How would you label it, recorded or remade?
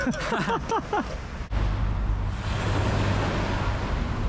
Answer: recorded